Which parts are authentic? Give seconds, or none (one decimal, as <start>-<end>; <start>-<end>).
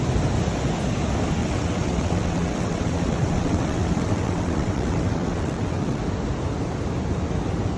0.0-1.4; 6.0-7.8